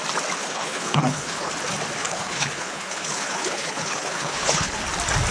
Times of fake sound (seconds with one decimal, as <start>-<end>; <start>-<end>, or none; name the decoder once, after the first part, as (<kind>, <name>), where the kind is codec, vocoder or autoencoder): 0.4-1.5 (codec, HILCodec); 2.0-4.7